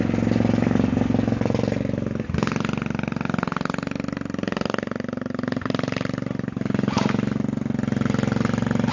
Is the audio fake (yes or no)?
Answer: no